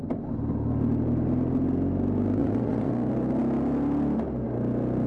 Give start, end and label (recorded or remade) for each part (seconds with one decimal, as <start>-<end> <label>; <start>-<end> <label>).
0.0-2.4 recorded; 2.4-2.9 remade; 2.9-5.1 recorded